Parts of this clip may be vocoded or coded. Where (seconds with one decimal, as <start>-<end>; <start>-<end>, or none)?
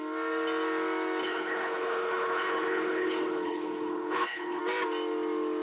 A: 1.2-4.6